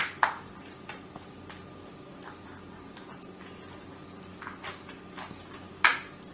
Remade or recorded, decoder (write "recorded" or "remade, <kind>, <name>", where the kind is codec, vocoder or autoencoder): recorded